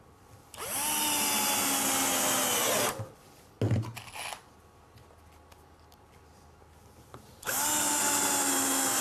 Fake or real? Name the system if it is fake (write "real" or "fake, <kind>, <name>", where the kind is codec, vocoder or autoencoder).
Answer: real